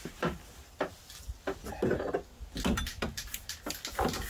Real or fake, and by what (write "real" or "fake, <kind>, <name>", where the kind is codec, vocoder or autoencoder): real